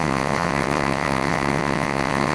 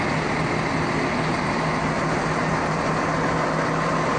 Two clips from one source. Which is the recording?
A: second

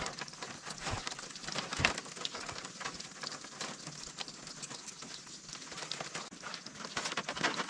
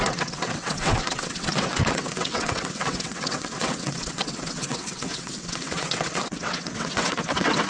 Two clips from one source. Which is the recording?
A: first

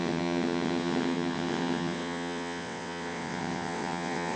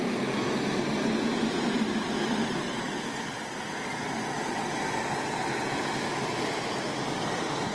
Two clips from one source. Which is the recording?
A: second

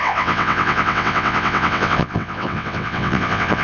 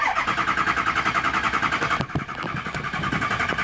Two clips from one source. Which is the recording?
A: second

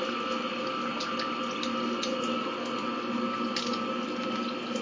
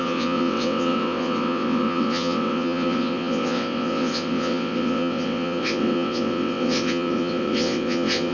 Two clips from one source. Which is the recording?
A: first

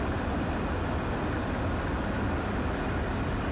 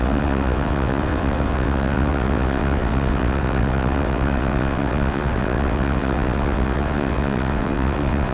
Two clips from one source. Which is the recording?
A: first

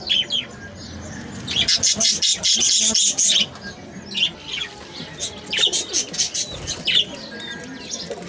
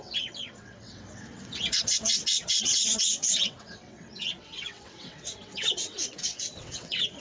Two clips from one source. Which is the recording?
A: first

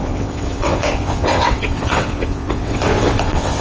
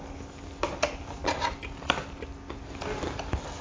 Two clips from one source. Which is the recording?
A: second